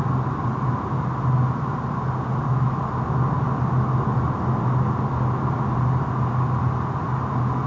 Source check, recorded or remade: recorded